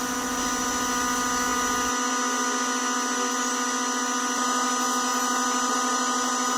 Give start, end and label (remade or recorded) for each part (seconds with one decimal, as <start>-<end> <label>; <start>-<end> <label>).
0.0-6.6 recorded